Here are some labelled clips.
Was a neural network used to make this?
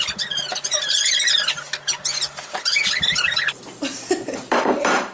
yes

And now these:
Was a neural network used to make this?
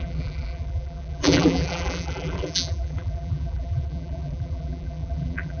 yes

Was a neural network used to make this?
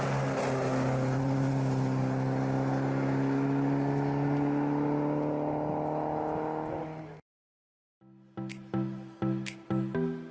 no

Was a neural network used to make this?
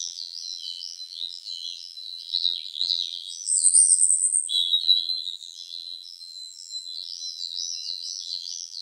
yes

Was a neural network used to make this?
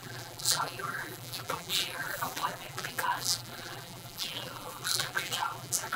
yes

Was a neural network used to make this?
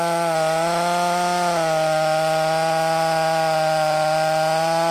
no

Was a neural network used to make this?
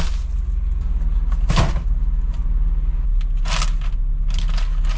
no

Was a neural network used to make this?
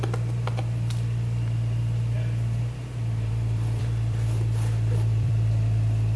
yes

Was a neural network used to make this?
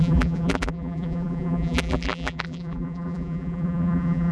yes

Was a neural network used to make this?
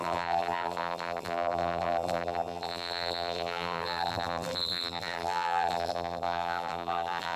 yes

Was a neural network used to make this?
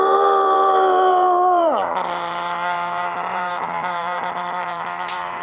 yes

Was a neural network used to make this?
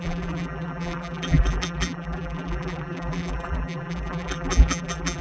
yes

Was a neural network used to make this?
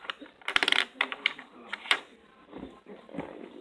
yes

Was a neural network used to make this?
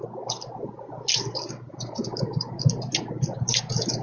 yes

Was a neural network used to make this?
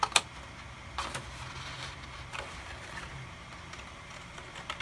no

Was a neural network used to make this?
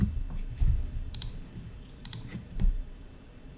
yes